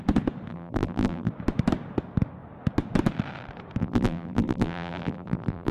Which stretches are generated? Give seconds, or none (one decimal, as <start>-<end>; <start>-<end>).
0.5-1.3; 3.8-5.7